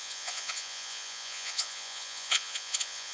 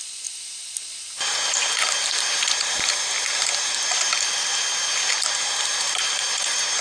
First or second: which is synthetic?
first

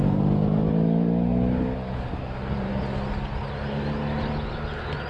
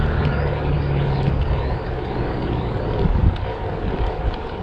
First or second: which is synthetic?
second